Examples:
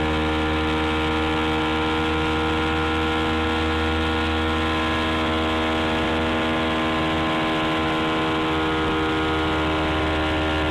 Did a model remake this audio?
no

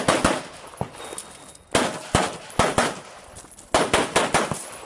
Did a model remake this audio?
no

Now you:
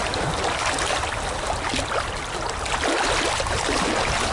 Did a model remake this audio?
no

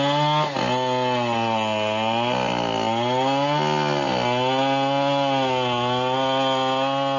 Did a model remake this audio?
no